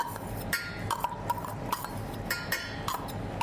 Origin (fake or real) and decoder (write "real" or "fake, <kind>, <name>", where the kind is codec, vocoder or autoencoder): real